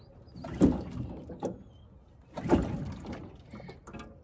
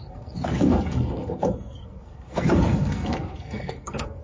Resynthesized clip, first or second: second